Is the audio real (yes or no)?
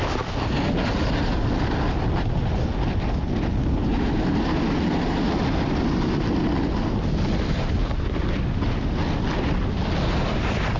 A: yes